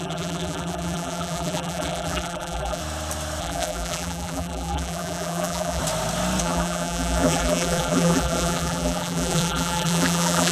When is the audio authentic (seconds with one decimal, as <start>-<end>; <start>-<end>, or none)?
2.8-3.4; 5.8-6.4